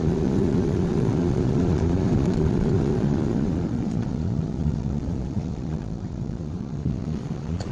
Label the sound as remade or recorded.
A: remade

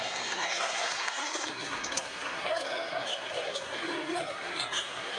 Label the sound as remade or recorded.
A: remade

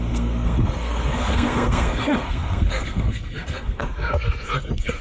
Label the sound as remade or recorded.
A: remade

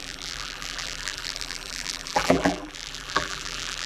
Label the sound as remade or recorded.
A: remade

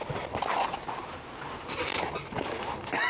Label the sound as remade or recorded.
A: recorded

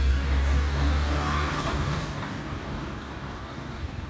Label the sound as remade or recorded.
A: remade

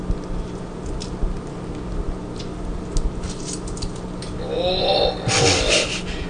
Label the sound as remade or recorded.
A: recorded